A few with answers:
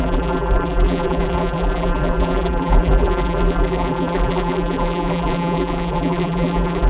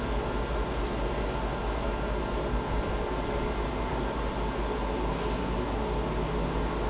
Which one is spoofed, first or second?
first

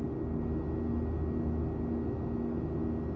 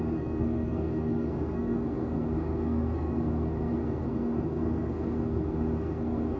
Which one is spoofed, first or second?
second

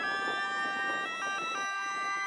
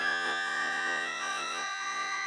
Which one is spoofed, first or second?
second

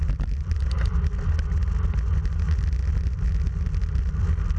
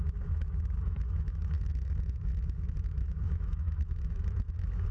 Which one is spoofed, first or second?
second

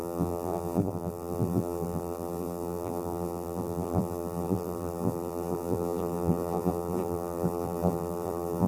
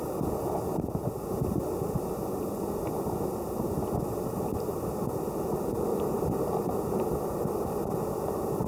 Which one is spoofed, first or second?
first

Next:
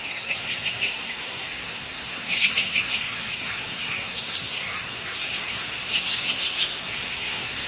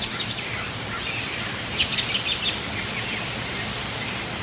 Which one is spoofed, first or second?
first